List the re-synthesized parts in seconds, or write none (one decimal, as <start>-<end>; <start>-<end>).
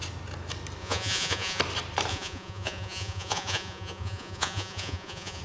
0.8-1.6; 2.1-5.4